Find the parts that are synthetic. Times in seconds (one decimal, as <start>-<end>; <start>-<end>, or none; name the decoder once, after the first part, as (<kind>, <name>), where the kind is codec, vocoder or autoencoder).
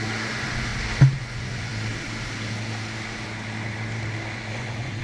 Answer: 0.0-0.7 (vocoder, Vocos); 1.2-1.7; 4.3-5.0